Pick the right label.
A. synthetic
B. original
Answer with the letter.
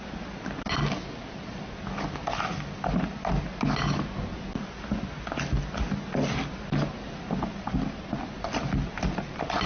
B